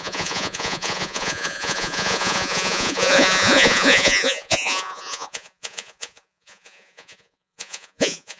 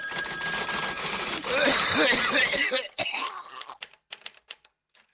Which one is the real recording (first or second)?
second